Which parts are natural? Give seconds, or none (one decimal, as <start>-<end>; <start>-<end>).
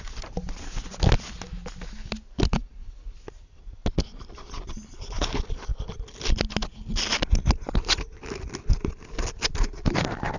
0.0-10.4